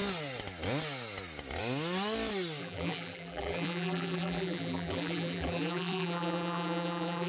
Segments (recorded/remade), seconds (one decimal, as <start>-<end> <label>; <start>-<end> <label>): 0.0-2.6 recorded; 2.6-7.3 remade